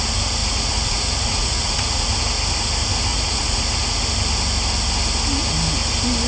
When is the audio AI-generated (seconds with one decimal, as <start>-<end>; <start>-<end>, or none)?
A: 0.4-2.1; 3.1-3.6